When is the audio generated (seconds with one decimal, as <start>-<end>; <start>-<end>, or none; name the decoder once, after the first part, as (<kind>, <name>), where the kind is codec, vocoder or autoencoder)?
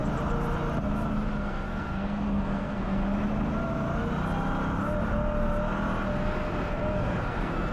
1.4-3.0 (codec, SNAC); 6.7-7.7